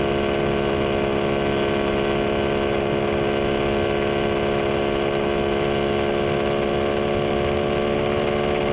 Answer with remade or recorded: recorded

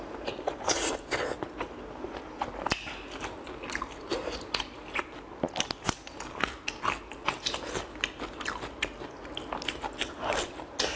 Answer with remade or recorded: recorded